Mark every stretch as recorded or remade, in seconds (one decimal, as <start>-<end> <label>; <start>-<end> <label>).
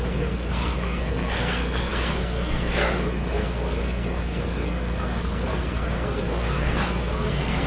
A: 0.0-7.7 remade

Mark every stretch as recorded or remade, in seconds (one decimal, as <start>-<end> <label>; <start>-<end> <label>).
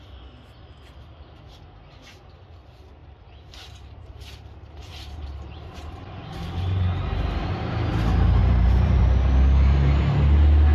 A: 0.0-3.0 recorded; 3.0-7.9 remade; 7.9-8.4 recorded; 8.4-9.0 remade; 9.0-10.7 recorded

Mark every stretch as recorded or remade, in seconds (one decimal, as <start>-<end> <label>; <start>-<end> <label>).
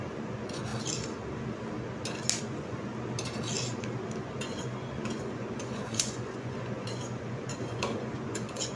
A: 0.0-0.7 remade; 0.7-2.4 recorded; 2.4-2.9 remade; 2.9-4.2 recorded; 4.2-8.8 remade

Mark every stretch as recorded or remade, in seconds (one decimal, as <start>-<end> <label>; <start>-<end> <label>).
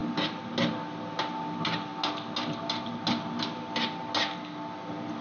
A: 0.0-5.2 recorded